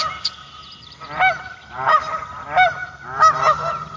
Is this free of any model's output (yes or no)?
no